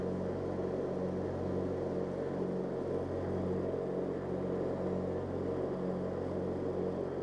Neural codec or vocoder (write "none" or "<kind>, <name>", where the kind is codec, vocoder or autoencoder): none